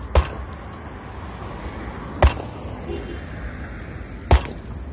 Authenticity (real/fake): real